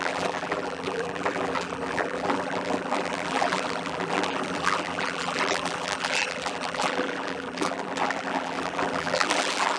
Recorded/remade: remade